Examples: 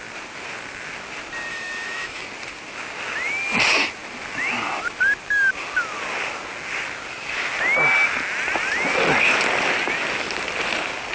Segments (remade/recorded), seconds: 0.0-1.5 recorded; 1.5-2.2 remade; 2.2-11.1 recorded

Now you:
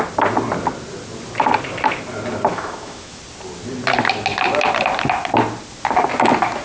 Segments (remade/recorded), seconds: 0.0-2.5 recorded; 2.5-3.2 remade; 3.2-6.6 recorded

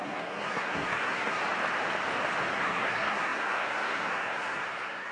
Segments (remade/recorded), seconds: 0.0-1.4 remade; 1.4-2.5 recorded; 2.5-5.1 remade

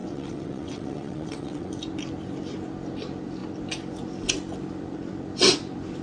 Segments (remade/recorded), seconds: 0.0-1.7 remade; 1.7-6.0 recorded